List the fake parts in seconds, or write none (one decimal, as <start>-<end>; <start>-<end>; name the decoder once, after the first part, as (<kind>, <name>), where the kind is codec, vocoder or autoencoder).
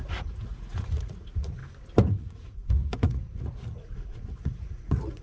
0.0-1.6 (vocoder, Vocos); 2.1-5.2